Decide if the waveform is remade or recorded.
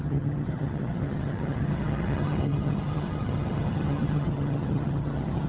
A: remade